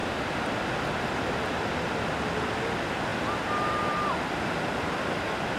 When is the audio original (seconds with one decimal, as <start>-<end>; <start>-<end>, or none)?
0.0-5.6